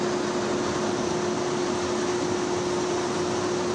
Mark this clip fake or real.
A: real